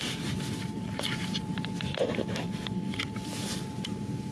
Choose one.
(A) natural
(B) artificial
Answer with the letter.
B